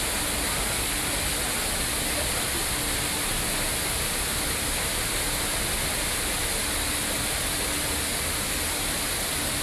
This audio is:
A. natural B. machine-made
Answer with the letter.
A